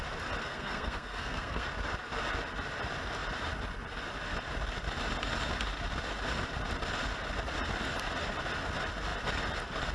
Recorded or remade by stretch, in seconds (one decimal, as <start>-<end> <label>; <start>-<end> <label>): 0.0-0.4 recorded; 0.4-1.7 remade; 1.7-9.9 recorded